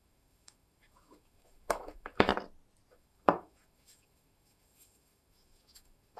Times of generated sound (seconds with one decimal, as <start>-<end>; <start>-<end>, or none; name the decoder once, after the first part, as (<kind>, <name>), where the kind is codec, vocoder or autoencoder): 0.0-2.3 (autoencoder, DAC-VAE); 2.9-6.2